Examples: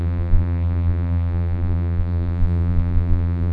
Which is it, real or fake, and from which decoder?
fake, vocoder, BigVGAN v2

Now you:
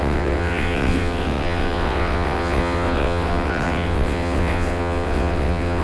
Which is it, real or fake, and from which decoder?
fake, vocoder, WaveNeXt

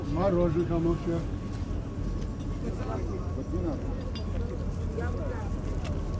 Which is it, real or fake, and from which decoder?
real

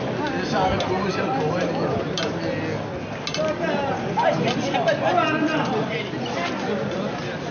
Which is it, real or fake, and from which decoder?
real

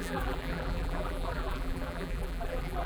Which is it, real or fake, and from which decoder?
fake, vocoder, BigVGAN v2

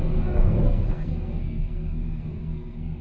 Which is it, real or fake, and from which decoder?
fake, codec, SNAC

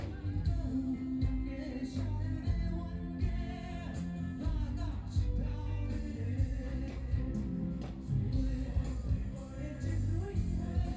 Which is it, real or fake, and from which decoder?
real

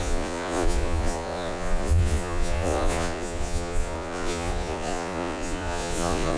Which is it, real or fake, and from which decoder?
fake, vocoder, Vocos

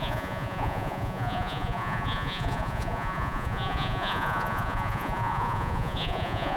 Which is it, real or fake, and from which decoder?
fake, vocoder, Vocos